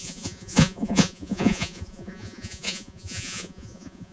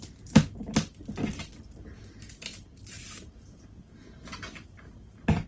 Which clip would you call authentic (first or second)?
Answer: second